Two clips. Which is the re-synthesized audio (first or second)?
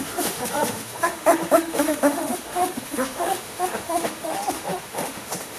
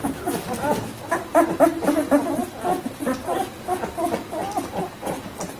first